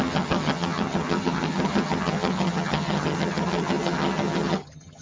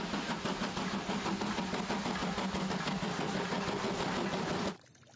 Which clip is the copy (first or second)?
first